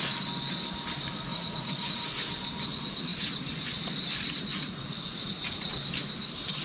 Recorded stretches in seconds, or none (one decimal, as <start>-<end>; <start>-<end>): 0.0-1.3; 2.0-4.5; 5.7-6.6